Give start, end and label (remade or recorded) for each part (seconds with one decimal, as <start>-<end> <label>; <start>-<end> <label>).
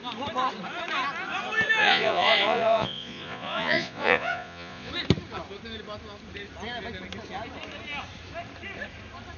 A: 0.0-1.8 recorded; 1.8-4.9 remade; 4.9-9.4 recorded